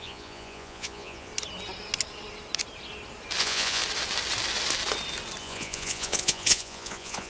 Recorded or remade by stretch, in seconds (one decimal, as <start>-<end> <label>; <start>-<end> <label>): 0.0-1.3 remade; 1.3-3.4 recorded; 3.4-3.8 remade; 3.8-5.4 recorded; 5.4-7.3 remade